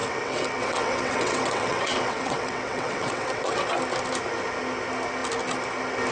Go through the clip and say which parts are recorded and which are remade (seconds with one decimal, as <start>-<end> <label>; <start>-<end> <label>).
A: 0.0-3.7 remade; 3.7-6.1 recorded